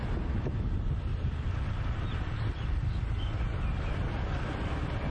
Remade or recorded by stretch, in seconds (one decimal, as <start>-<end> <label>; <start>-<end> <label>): 0.0-1.1 recorded; 1.1-2.9 remade; 2.9-5.1 recorded